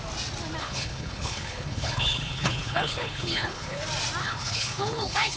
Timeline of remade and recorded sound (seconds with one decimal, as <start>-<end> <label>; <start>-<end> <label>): 0.0-0.6 recorded; 0.6-3.8 remade; 3.8-4.2 recorded; 4.2-5.4 remade